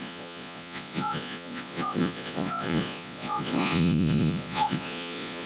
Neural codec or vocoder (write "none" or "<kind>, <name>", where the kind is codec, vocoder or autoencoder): vocoder, Vocos